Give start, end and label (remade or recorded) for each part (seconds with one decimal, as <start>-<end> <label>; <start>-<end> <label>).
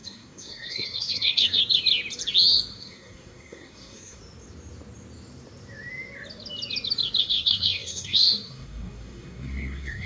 0.0-1.6 remade; 1.6-2.7 recorded; 2.7-4.2 remade; 4.2-7.2 recorded; 7.2-10.1 remade